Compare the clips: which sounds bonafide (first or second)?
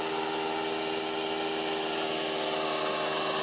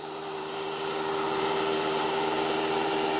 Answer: first